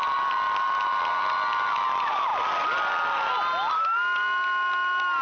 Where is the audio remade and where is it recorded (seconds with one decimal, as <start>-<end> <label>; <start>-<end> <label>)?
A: 0.0-5.2 recorded